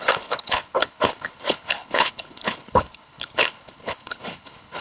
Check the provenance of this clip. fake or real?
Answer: fake